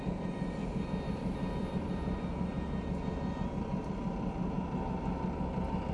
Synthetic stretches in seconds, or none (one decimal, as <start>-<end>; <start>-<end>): 0.0-2.5; 3.6-4.4